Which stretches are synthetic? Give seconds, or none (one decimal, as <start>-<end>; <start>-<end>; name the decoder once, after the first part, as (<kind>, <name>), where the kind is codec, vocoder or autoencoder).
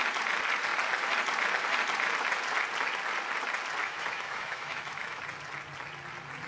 3.8-5.2 (autoencoder, DAC-VAE)